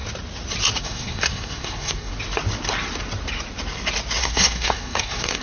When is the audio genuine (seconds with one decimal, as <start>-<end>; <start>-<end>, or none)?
0.0-0.8; 2.1-4.2

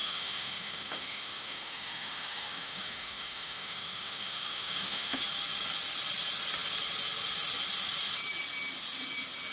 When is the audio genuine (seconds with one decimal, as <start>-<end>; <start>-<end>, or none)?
5.2-9.5